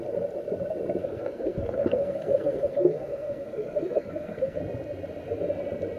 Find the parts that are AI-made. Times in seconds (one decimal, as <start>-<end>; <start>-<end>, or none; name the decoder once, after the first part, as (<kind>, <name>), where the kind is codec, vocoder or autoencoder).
1.0-4.6 (codec, SNAC)